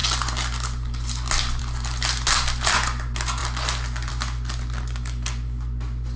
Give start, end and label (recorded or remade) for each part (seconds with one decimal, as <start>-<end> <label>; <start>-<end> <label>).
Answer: 0.0-6.2 recorded

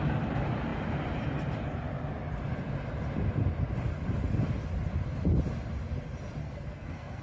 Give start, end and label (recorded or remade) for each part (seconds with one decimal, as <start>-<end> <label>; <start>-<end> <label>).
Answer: 0.0-6.4 recorded; 6.4-7.2 remade

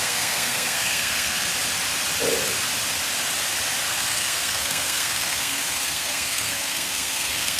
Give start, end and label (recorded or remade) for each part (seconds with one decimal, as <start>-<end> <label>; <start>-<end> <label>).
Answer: 0.0-1.5 remade; 1.5-3.9 recorded; 3.9-7.6 remade

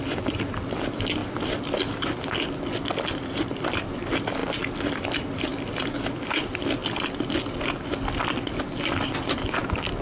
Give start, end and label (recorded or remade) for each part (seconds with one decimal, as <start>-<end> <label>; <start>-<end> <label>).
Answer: 0.0-4.4 remade; 4.4-5.0 recorded; 5.0-5.5 remade; 5.5-6.0 recorded; 6.0-6.8 remade; 6.8-9.6 recorded; 9.6-10.0 remade

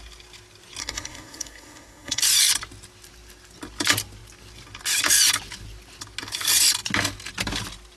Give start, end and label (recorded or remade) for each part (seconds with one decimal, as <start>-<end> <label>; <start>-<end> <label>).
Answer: 0.0-0.8 recorded; 0.8-2.2 remade; 2.2-8.0 recorded

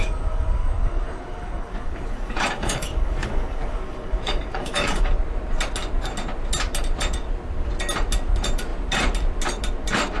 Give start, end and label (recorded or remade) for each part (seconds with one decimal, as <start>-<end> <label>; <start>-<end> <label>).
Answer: 0.0-5.1 remade; 5.1-10.2 recorded

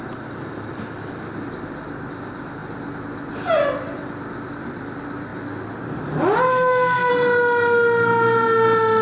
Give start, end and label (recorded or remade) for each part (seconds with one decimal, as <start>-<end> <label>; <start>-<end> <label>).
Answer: 0.0-6.5 recorded; 6.5-7.1 remade; 7.1-9.0 recorded

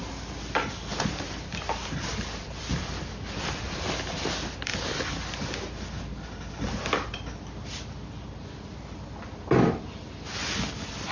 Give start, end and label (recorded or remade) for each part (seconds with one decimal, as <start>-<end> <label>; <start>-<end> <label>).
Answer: 0.0-0.9 recorded; 0.9-4.0 remade; 4.0-11.1 recorded